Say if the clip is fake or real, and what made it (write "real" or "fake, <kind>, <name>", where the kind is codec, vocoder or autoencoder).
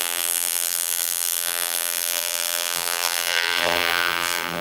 fake, vocoder, BigVGAN v2